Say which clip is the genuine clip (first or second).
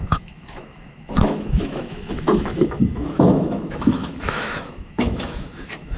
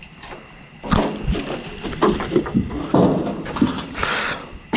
second